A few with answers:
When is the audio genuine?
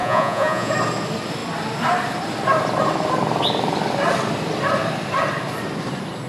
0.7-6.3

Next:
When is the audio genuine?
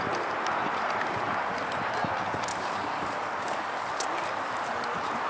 0.0-2.5; 3.9-5.3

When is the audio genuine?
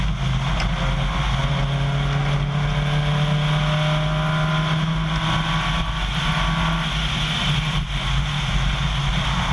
0.0-7.4; 8.9-9.5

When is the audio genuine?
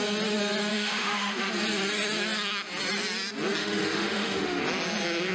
0.0-0.7; 1.5-3.6; 4.6-5.3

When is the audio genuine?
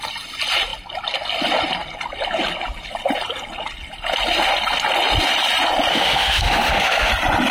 0.0-5.9; 7.1-7.5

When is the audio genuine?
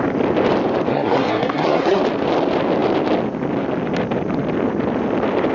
0.0-0.9; 2.0-5.5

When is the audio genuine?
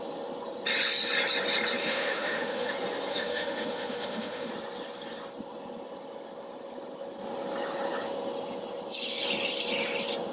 0.0-1.8; 2.7-3.1; 4.5-10.3